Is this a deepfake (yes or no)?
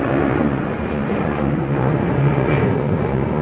yes